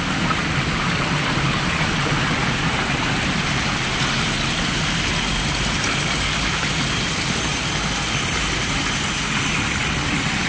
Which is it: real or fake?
real